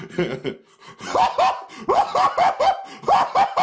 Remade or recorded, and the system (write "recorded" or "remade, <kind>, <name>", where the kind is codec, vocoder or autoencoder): recorded